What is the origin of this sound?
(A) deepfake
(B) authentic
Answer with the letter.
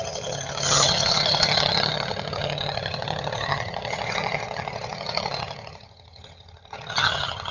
A